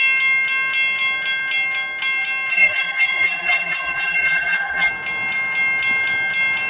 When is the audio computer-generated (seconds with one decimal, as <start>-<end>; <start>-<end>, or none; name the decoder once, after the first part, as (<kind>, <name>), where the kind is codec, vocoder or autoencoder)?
2.5-4.9 (vocoder, BigVGAN v2)